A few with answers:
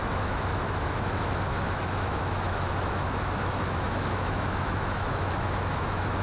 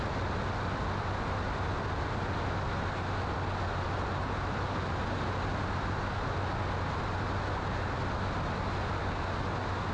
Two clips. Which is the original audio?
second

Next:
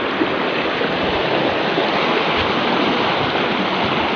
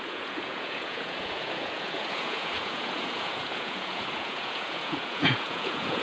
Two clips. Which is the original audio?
first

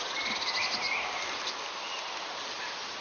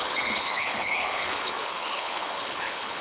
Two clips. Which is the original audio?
first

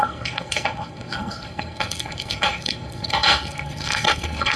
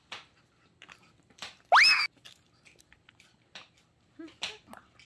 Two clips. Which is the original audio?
second